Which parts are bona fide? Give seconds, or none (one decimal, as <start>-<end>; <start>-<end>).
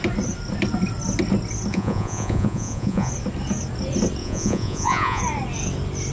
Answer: 0.0-1.7; 3.1-4.2; 5.2-6.1